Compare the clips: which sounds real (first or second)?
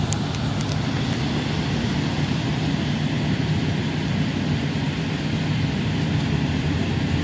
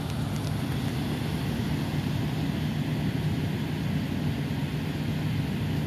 second